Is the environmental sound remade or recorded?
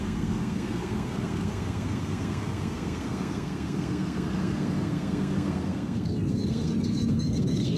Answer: remade